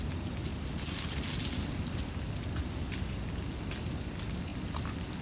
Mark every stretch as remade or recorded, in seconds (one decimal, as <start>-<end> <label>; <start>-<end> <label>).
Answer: 0.0-5.2 recorded